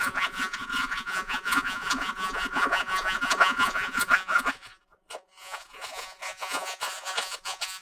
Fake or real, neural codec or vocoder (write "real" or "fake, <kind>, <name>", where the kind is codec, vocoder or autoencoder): fake, vocoder, Vocos